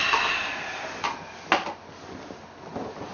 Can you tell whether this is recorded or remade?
recorded